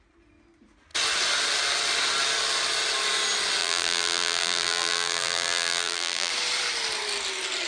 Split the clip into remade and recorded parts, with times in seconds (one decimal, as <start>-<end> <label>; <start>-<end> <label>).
0.0-3.6 recorded; 3.6-6.3 remade; 6.3-7.7 recorded